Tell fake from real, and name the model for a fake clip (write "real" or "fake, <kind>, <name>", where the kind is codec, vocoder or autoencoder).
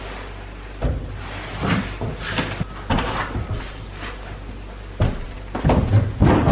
real